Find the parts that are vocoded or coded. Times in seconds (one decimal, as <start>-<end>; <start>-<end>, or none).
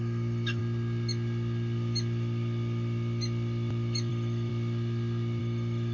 0.0-0.6; 4.1-4.5; 5.4-5.9